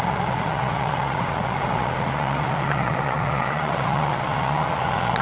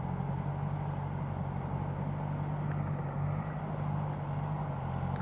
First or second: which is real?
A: second